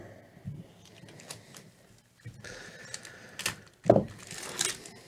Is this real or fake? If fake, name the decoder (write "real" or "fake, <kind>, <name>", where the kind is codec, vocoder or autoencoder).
real